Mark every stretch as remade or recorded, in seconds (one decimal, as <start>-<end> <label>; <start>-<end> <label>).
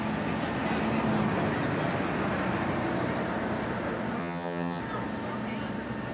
0.0-4.2 recorded; 4.2-4.8 remade; 4.8-6.1 recorded